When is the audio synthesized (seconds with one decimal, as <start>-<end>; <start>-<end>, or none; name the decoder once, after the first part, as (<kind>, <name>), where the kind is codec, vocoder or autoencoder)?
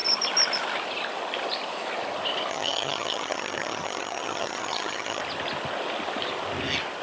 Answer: 2.5-5.2 (vocoder, HiFi-GAN)